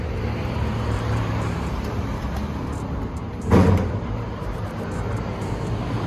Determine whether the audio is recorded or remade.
remade